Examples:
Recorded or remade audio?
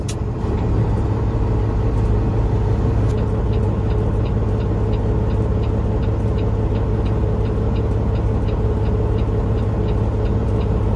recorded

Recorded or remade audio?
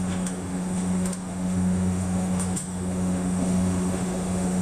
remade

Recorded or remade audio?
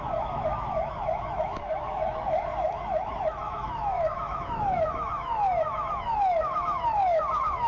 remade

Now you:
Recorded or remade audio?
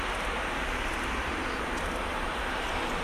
recorded